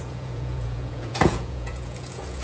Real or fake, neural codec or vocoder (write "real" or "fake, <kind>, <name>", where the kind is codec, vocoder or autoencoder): fake, vocoder, Vocos